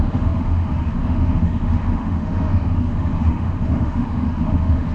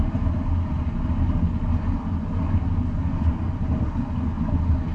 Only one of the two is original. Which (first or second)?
second